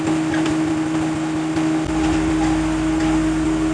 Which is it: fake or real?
real